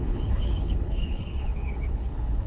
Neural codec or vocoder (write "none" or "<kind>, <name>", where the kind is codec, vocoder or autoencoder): codec, HILCodec